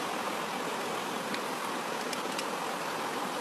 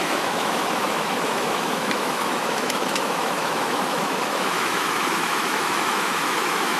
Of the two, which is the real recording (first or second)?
first